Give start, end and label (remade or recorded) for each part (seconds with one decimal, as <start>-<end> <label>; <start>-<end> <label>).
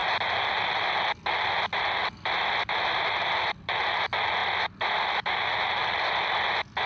0.0-6.9 recorded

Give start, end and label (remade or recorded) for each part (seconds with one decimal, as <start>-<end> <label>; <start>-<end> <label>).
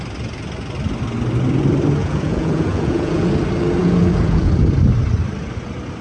0.0-2.0 recorded; 2.0-3.3 remade; 3.3-3.8 recorded; 3.8-4.5 remade; 4.5-6.0 recorded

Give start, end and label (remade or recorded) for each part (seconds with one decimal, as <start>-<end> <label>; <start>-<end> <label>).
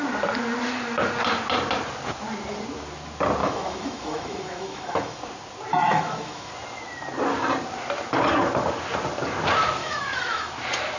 0.0-3.4 recorded; 3.4-5.2 remade; 5.2-5.7 recorded; 5.7-6.5 remade; 6.5-9.8 recorded; 9.8-10.5 remade; 10.5-11.0 recorded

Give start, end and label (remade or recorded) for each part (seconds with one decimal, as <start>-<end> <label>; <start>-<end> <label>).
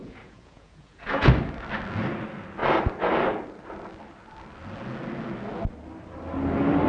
0.0-1.3 remade; 1.3-6.9 recorded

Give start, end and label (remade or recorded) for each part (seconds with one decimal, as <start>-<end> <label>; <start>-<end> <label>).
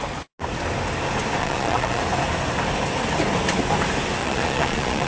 0.0-1.4 recorded; 1.4-2.0 remade; 2.0-4.2 recorded; 4.2-5.1 remade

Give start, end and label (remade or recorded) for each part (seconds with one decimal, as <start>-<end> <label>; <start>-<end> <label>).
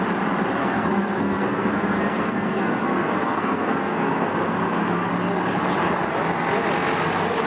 0.0-0.6 recorded; 0.6-5.1 remade; 5.1-7.5 recorded